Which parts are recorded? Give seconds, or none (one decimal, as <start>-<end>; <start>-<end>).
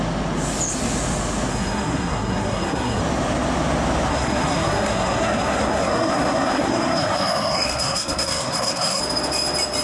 0.0-1.5; 3.0-4.1; 9.0-9.8